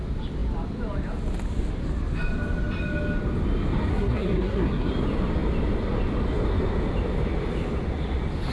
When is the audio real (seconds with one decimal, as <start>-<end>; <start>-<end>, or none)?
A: 0.0-3.9; 4.9-8.5